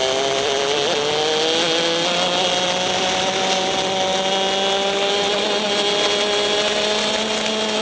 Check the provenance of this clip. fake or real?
real